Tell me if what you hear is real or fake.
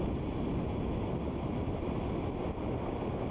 real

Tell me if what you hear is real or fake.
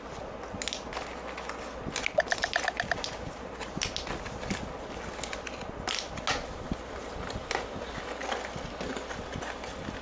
real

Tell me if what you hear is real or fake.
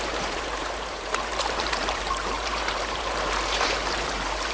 fake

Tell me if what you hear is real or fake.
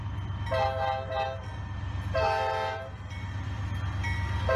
real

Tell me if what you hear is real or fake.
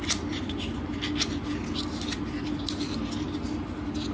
real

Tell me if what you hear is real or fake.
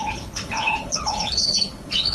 fake